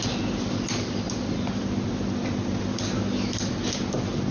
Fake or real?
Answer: real